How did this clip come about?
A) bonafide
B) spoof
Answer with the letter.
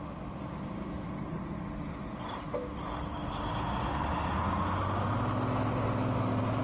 A